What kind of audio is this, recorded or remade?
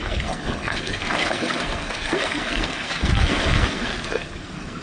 remade